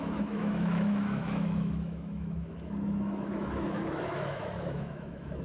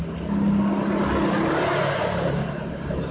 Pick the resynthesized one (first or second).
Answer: first